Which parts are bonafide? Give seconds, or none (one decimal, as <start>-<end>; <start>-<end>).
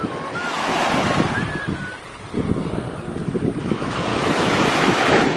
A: 0.7-3.6